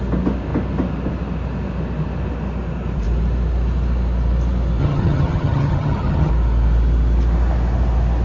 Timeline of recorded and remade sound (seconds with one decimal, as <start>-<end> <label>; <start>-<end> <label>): 0.0-4.8 recorded; 4.8-6.3 remade; 6.3-8.2 recorded